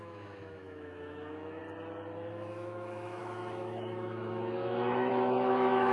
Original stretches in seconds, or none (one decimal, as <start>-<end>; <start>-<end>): 1.6-2.3